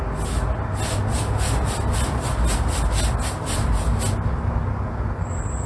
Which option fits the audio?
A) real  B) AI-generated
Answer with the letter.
A